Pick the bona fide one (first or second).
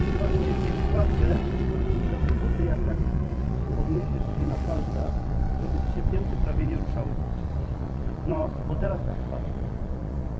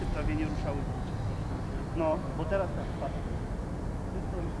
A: second